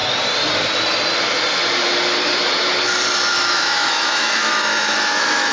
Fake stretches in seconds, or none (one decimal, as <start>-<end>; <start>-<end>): 3.3-5.5